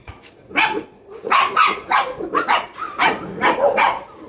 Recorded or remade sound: remade